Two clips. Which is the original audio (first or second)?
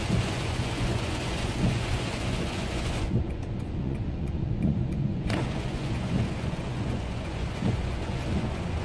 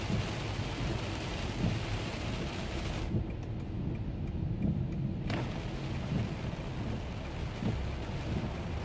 second